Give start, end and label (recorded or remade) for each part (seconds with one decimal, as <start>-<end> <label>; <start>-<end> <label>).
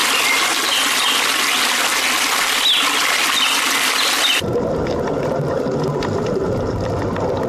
0.0-7.5 recorded